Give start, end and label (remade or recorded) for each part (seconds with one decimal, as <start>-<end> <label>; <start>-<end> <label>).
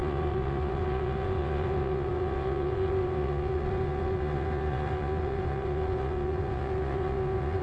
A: 0.0-7.6 remade